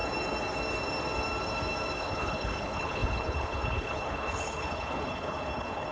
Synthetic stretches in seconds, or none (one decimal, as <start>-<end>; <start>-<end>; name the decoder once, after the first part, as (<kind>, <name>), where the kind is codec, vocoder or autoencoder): 2.0-5.9 (codec, HILCodec)